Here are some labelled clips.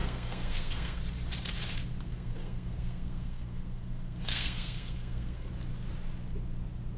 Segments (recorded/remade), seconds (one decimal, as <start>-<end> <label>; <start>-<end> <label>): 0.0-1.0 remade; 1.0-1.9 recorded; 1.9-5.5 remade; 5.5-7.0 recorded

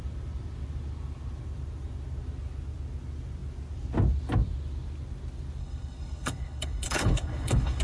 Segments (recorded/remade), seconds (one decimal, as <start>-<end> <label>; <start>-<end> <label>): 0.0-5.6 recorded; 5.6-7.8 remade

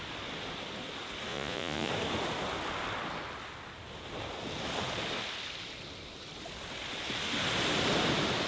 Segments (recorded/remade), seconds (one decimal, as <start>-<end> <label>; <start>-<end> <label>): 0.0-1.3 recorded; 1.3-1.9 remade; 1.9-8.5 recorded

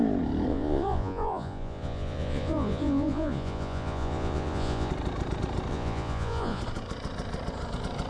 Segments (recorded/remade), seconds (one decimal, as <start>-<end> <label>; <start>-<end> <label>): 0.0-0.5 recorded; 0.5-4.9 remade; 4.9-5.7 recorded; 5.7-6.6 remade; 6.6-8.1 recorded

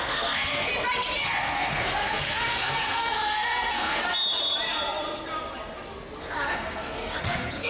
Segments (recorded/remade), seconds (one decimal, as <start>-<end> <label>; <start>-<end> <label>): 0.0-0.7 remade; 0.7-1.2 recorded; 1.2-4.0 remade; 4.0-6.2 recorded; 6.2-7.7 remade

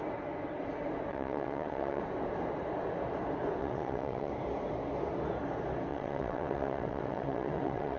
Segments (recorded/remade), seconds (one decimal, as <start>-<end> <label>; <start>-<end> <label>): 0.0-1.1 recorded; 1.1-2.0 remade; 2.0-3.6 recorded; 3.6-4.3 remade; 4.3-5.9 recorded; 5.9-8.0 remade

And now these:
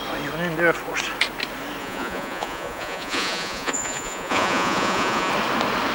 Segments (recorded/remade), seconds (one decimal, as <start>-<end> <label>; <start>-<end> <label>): 0.0-1.8 recorded; 1.8-5.3 remade; 5.3-5.9 recorded

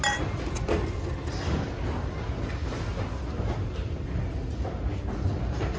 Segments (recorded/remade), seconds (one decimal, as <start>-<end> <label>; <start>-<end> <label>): 0.0-5.8 recorded